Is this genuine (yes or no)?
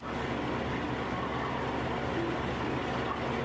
yes